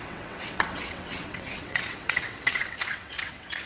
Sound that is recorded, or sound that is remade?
remade